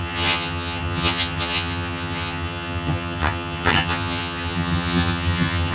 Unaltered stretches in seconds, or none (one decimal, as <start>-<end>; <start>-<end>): none